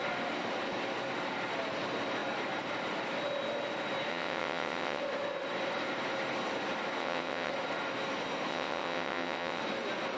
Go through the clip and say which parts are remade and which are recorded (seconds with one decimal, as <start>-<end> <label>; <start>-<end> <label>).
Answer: 0.0-4.1 recorded; 4.1-5.0 remade; 5.0-7.0 recorded; 7.0-7.5 remade; 7.5-8.5 recorded; 8.5-9.6 remade; 9.6-10.2 recorded